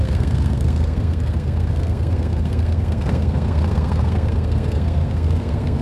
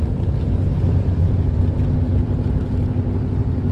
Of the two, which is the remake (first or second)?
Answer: first